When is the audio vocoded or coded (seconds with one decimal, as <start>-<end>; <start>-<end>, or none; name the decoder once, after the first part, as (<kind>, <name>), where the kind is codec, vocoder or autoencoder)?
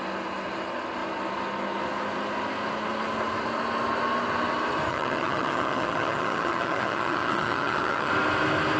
4.9-8.1 (vocoder, HiFi-GAN)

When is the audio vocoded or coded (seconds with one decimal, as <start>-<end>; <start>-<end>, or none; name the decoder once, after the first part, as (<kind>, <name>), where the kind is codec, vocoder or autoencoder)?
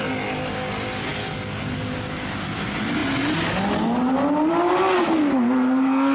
none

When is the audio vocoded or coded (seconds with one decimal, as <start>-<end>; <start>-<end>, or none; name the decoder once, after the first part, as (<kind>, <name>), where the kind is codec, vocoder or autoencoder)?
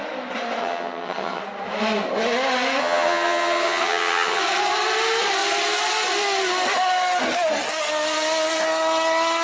0.6-1.4 (vocoder, HiFi-GAN); 2.8-4.4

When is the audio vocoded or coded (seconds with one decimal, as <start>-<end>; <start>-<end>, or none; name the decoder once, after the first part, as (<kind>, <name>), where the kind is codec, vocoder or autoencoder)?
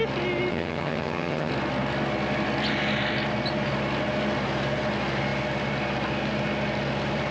0.5-1.5 (vocoder, HiFi-GAN)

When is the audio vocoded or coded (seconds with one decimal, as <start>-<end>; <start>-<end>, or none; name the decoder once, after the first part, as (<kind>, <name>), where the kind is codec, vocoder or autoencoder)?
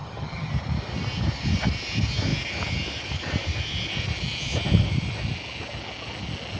0.0-0.5 (vocoder, HiFi-GAN)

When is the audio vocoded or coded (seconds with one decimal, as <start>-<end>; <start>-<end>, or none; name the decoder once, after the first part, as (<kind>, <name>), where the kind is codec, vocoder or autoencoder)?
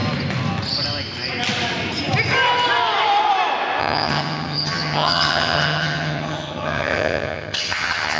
3.8-8.2 (vocoder, HiFi-GAN)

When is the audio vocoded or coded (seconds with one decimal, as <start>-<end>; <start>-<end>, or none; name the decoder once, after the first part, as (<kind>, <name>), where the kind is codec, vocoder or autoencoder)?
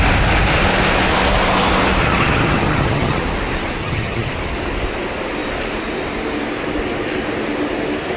2.0-3.2 (vocoder, HiFi-GAN); 3.8-4.3